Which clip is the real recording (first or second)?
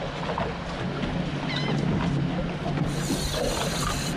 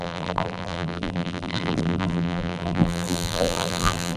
first